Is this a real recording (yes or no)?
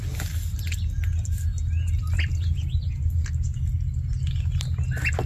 yes